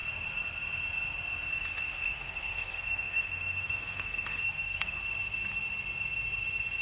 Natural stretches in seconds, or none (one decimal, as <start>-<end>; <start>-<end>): 0.0-2.0; 5.0-6.8